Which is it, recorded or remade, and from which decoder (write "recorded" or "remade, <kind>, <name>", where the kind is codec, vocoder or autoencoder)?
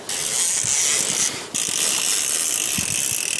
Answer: recorded